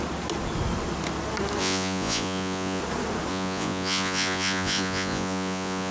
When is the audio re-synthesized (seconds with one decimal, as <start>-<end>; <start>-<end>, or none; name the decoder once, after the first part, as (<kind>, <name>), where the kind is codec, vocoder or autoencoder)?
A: 1.6-2.8 (vocoder, Vocos); 3.3-5.9